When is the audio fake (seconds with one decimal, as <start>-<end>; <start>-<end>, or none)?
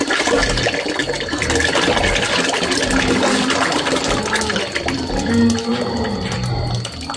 none